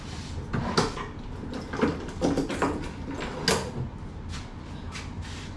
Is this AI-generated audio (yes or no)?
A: no